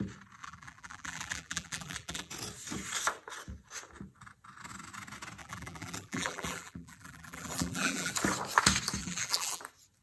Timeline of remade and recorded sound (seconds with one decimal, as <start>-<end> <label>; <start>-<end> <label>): 0.0-0.4 recorded; 0.4-2.3 remade; 2.3-5.4 recorded; 5.4-8.1 remade; 8.1-9.0 recorded; 9.0-9.6 remade; 9.6-10.0 recorded